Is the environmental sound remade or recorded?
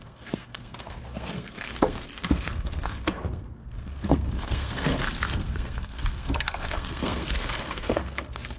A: remade